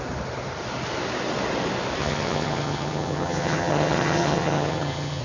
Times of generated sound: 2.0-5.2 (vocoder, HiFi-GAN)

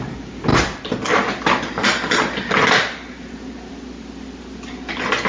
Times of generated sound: none